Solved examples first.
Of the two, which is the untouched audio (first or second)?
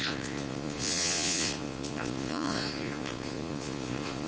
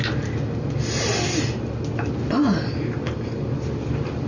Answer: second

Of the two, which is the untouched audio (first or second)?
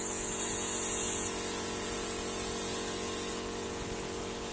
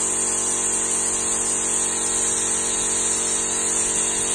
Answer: second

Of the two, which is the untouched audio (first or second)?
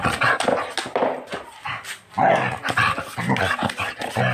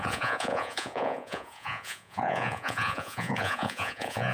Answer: first